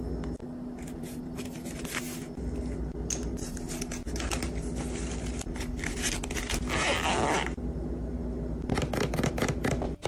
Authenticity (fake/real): real